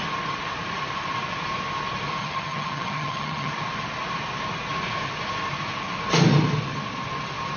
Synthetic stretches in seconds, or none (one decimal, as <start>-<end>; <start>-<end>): 2.2-3.5